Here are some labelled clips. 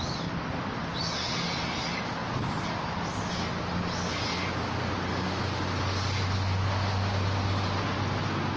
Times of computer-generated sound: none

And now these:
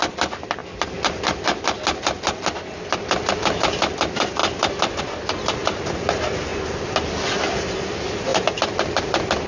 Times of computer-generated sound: 6.5-7.7 (vocoder, BigVGAN v2)

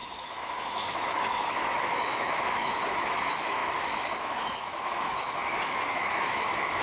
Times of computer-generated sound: 0.0-6.8 (autoencoder, DAC-VAE)

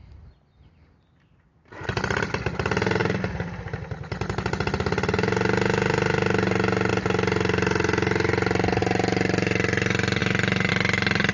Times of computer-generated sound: none